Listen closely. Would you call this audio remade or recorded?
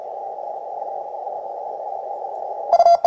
recorded